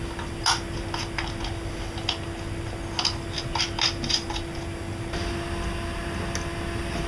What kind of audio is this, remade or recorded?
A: recorded